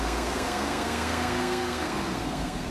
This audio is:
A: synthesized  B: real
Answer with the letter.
A